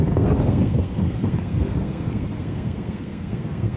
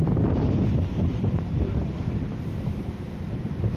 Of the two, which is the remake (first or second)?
first